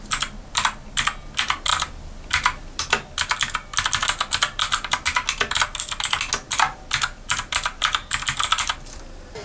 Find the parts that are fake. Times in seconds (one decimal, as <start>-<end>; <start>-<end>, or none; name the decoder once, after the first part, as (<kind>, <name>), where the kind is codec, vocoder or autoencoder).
none